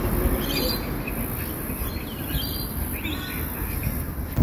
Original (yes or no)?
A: yes